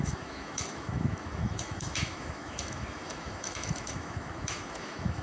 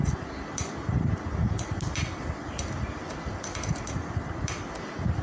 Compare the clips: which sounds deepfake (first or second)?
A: first